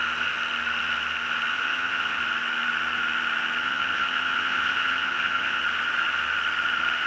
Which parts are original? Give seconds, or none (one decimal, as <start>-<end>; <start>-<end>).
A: 0.0-1.5; 2.2-3.6; 5.6-7.1